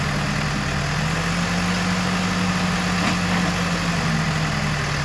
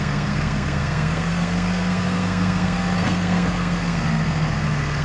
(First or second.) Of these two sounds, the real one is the first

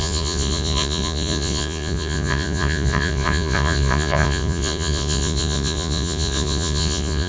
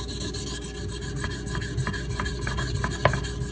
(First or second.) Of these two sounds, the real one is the second